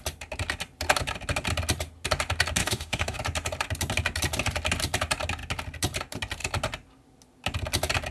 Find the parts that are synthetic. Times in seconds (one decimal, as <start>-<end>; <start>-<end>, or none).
2.6-3.2